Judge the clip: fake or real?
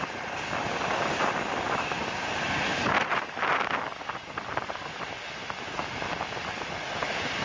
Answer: real